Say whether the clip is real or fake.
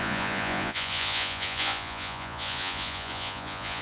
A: fake